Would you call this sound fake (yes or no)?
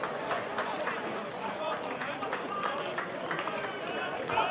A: yes